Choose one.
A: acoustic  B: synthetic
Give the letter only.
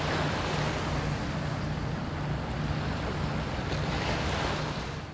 A